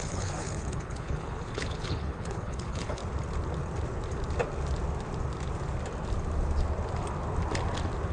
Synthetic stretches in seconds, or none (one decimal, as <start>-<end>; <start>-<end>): 0.0-3.0